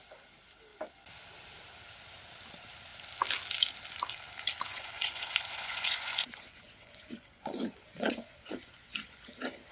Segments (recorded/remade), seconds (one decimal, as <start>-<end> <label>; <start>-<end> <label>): 0.0-4.7 recorded; 4.7-9.7 remade